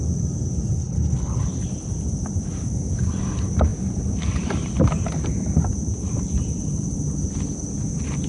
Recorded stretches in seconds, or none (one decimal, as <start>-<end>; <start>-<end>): 0.0-0.8; 1.4-8.3